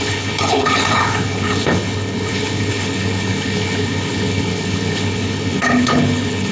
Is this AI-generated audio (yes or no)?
yes